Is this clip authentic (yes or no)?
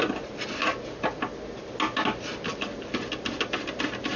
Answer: yes